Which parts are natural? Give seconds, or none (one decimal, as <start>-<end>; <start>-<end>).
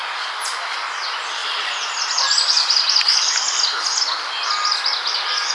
0.5-1.4; 3.3-5.5